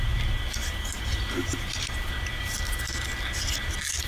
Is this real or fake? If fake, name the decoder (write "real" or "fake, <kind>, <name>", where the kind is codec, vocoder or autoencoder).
real